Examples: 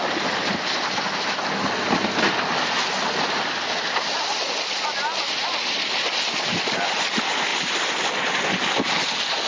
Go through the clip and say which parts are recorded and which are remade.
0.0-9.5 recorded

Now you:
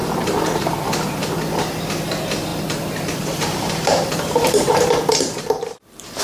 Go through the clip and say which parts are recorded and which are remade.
0.0-0.7 remade; 0.7-2.5 recorded; 2.5-6.2 remade

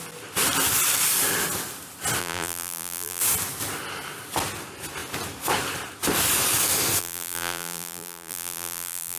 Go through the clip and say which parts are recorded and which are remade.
0.0-2.2 recorded; 2.2-3.2 remade; 3.2-7.0 recorded; 7.0-9.2 remade

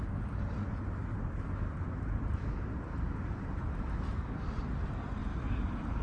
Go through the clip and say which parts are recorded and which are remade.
0.0-1.0 recorded; 1.0-4.5 remade; 4.5-5.2 recorded; 5.2-6.0 remade